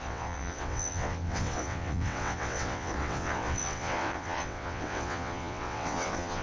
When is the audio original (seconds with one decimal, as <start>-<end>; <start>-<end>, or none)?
none